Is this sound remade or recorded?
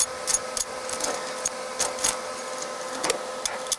recorded